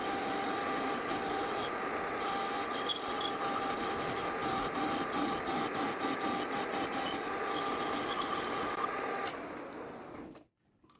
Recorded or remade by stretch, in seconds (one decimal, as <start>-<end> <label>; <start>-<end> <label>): 0.0-11.0 recorded